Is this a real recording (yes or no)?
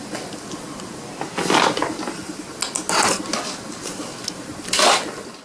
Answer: yes